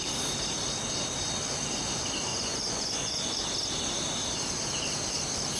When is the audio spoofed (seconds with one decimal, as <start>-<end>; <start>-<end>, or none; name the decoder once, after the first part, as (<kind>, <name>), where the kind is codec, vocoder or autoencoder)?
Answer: 2.3-3.4 (vocoder, Vocos)

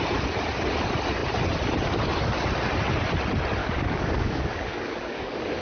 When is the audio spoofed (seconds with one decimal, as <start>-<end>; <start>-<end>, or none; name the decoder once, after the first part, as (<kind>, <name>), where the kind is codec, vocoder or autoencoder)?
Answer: 3.6-5.6 (codec, DAC)

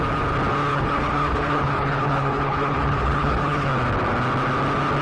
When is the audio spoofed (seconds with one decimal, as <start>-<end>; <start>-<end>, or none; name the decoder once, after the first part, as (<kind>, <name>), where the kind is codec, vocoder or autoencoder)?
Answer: 0.7-3.7 (codec, HILCodec)

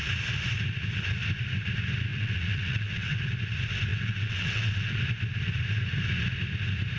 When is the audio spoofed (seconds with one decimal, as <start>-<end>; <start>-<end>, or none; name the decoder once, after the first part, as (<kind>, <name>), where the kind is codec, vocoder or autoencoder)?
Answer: 2.1-3.2 (vocoder, WaveNeXt); 3.9-5.0

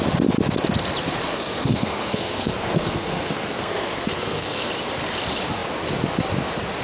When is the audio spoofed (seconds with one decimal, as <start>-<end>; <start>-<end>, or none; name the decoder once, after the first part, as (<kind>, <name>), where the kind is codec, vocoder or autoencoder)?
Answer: 1.3-4.7 (codec, SNAC)

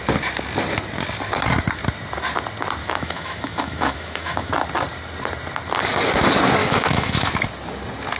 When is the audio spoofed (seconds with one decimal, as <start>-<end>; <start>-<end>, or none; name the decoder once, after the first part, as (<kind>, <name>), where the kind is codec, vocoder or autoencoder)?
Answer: 2.8-4.5 (autoencoder, DAC-VAE); 6.6-7.3

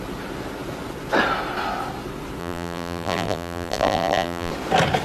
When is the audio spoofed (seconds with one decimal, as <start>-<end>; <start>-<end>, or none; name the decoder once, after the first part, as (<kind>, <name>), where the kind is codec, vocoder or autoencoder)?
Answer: 2.4-4.5 (vocoder, BigVGAN v2)